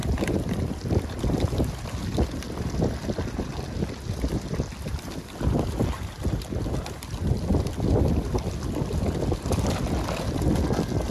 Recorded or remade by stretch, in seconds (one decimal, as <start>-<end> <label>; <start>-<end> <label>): 0.0-11.1 recorded